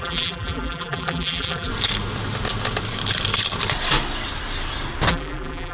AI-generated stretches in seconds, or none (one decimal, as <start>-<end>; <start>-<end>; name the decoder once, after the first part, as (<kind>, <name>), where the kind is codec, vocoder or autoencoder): 0.0-1.7 (vocoder, BigVGAN v2); 5.1-5.7